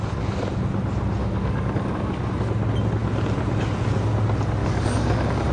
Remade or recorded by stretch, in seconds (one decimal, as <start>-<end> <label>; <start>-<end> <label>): 0.0-1.2 recorded; 1.2-2.2 remade; 2.2-4.6 recorded; 4.6-5.5 remade